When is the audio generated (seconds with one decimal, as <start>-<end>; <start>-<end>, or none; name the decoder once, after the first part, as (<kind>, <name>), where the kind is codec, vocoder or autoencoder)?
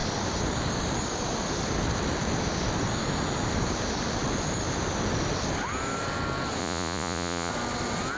6.6-7.5 (vocoder, Vocos)